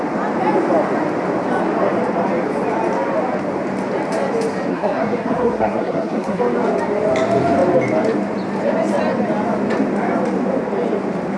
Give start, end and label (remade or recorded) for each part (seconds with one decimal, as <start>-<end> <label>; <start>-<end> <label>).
0.0-4.7 recorded; 4.7-6.4 remade; 6.4-11.4 recorded